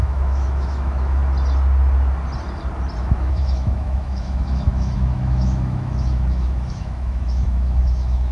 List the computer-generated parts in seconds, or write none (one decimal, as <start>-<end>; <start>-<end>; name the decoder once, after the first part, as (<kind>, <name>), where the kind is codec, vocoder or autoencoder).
0.0-1.2 (autoencoder, DAC-VAE); 3.0-8.3